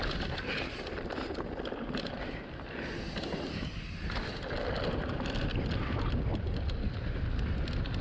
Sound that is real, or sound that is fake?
real